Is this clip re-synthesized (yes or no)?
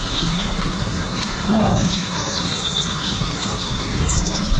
yes